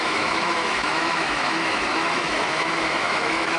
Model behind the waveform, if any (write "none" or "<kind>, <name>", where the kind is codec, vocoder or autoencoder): autoencoder, DAC-VAE